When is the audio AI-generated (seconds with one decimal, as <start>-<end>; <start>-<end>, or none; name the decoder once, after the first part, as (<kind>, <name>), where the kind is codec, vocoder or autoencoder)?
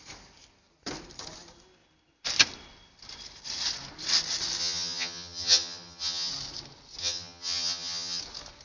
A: 4.6-6.3 (vocoder, HiFi-GAN); 7.0-8.2